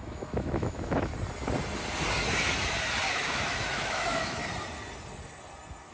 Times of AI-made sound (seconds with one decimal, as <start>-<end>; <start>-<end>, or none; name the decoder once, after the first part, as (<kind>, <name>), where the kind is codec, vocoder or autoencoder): 0.0-1.1 (autoencoder, DAC-VAE); 3.1-4.4

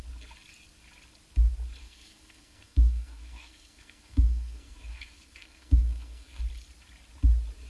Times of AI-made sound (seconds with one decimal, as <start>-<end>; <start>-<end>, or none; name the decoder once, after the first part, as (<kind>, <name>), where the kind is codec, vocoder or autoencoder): 1.8-6.4 (codec, SNAC)

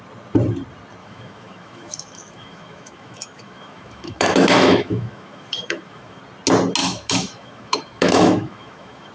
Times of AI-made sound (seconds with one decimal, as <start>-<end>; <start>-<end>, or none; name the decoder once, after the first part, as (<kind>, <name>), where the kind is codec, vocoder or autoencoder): 1.0-6.2 (autoencoder, DAC-VAE); 6.8-9.1

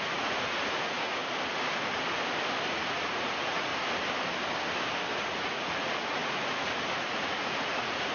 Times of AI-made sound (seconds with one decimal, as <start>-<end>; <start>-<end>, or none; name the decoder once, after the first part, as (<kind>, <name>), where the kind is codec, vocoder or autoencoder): 0.0-1.2 (vocoder, Vocos); 2.7-3.7; 5.1-8.1

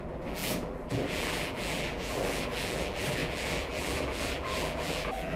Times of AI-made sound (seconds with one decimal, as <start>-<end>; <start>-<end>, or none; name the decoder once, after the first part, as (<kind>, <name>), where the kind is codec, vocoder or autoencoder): 0.0-5.4 (vocoder, BigVGAN v2)

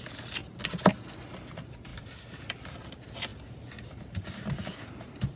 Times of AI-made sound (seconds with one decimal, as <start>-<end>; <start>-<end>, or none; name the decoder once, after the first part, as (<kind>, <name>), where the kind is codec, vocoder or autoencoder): 0.4-0.9 (vocoder, BigVGAN v2); 1.9-2.8; 3.3-4.3

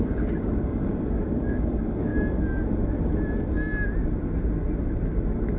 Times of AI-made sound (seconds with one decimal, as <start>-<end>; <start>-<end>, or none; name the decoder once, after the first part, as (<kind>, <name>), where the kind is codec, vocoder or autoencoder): 0.0-2.1 (codec, DAC)

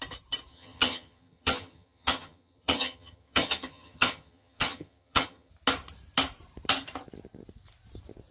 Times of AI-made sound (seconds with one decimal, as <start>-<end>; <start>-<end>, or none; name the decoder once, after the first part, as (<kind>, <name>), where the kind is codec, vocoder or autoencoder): 0.5-5.5 (vocoder, HiFi-GAN)